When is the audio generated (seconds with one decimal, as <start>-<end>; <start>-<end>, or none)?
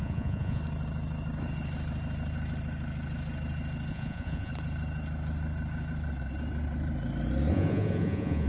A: 0.0-0.6; 3.9-4.5; 7.5-8.5